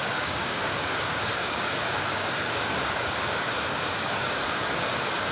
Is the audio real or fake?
fake